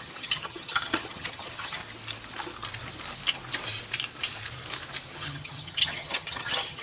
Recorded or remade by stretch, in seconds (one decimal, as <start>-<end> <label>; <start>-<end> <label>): 0.0-1.8 remade; 1.8-5.1 recorded; 5.1-6.8 remade